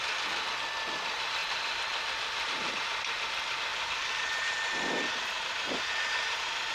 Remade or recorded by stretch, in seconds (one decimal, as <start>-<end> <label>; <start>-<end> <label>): 0.0-6.7 remade